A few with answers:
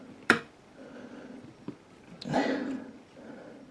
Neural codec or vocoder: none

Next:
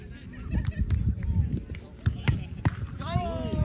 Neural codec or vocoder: none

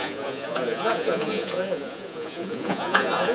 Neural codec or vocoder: vocoder, Vocos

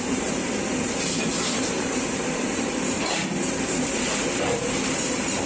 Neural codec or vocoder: vocoder, BigVGAN v2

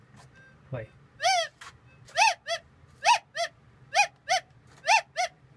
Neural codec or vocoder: none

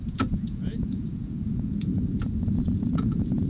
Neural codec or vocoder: vocoder, Vocos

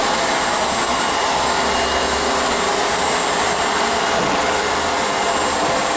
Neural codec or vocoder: none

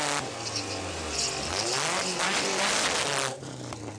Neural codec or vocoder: none